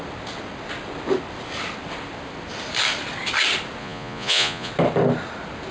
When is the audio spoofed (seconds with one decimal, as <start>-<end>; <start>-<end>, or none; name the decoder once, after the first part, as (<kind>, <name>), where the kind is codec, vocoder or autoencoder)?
3.8-4.7 (vocoder, Vocos)